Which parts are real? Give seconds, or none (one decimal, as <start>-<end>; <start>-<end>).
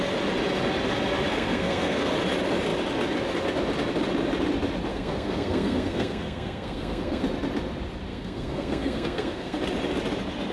0.0-1.3; 2.1-4.9; 7.2-8.1; 9.6-10.5